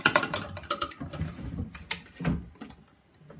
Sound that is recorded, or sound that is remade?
recorded